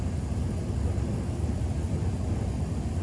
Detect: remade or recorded recorded